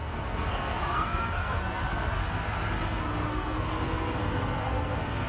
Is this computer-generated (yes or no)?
yes